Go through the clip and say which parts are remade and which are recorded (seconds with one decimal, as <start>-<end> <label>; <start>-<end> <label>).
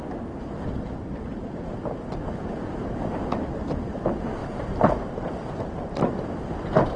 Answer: 0.0-4.4 recorded; 4.4-6.3 remade; 6.3-7.0 recorded